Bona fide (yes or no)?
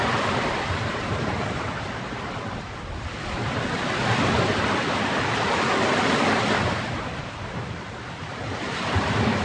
no